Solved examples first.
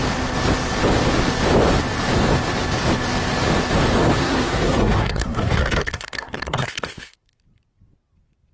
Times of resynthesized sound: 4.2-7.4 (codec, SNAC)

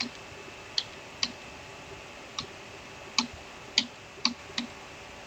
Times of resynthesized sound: none

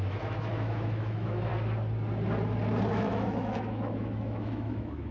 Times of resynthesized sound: 0.0-1.5 (autoencoder, DAC-VAE); 2.9-5.1

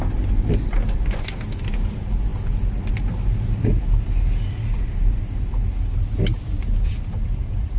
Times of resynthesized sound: none

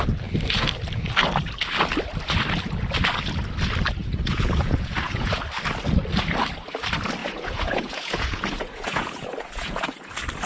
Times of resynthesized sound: 4.0-5.4 (vocoder, Vocos); 7.2-10.1